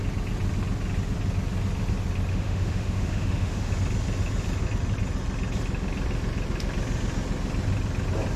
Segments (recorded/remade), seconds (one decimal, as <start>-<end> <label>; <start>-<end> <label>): 0.0-2.3 recorded; 2.3-3.7 remade; 3.7-8.4 recorded